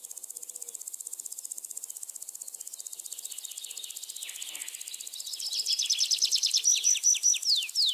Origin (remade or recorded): recorded